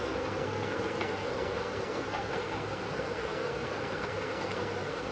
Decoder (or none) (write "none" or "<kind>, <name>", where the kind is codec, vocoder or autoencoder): codec, SNAC